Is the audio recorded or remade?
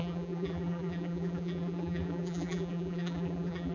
remade